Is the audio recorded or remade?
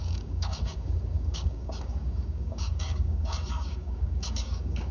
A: remade